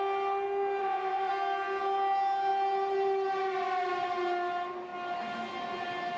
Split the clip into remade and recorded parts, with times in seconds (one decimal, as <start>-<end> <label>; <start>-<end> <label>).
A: 0.0-0.8 recorded; 0.8-1.3 remade; 1.3-6.2 recorded